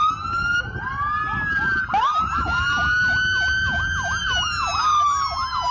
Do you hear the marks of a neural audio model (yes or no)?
no